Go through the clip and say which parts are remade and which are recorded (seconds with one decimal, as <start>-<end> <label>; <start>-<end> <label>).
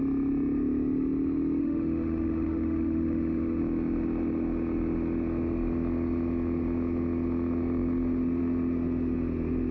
0.0-1.6 recorded; 1.6-3.6 remade; 3.6-9.7 recorded